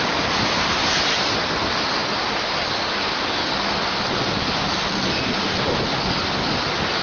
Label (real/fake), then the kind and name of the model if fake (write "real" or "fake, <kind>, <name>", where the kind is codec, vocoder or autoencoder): real